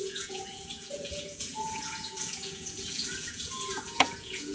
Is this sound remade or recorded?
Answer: remade